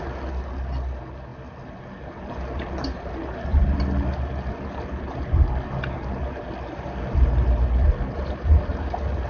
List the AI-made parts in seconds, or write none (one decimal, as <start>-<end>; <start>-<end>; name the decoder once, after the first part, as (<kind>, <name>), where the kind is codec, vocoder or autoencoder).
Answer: none